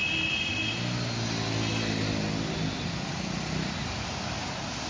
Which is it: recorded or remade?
recorded